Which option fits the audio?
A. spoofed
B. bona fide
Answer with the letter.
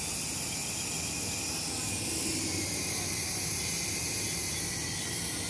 B